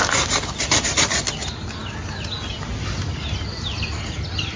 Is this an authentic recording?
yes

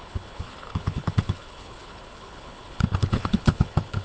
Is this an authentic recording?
no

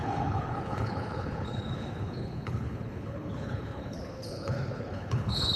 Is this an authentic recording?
no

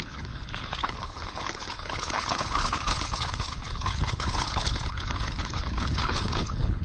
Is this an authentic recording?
no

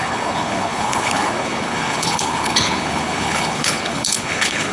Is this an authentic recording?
no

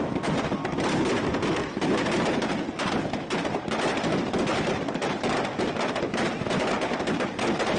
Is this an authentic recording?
yes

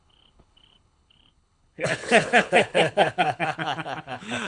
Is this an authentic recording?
no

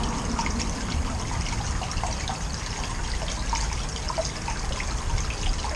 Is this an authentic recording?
yes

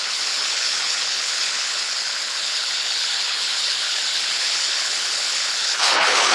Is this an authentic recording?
no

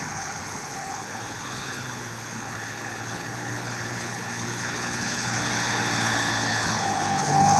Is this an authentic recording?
no